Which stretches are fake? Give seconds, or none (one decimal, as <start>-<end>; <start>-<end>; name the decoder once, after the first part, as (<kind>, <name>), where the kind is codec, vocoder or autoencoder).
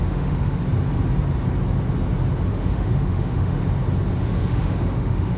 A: 0.0-0.6 (autoencoder, DAC-VAE); 2.5-3.6; 4.2-5.4